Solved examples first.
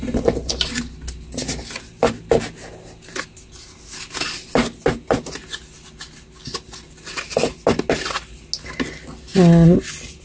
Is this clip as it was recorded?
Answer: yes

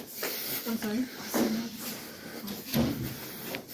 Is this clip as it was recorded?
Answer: yes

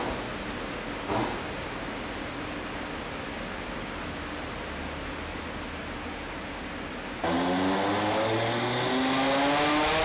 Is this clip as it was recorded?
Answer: yes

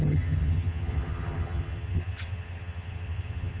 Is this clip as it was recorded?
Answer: no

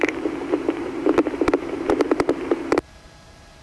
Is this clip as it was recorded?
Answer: no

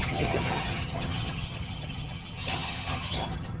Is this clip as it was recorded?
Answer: no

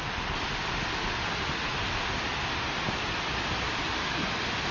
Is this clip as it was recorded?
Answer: yes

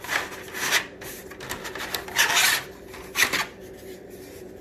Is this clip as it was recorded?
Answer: yes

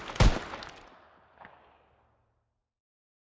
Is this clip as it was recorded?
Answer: yes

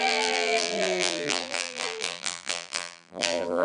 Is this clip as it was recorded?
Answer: no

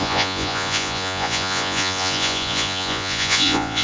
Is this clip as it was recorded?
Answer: no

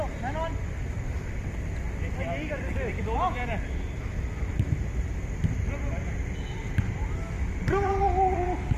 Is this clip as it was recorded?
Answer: yes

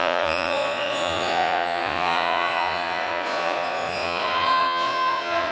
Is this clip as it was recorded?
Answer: no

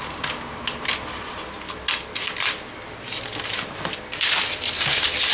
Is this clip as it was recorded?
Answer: yes